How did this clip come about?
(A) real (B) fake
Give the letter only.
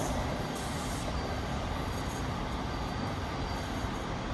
A